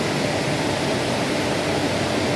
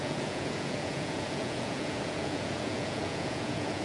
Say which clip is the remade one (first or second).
second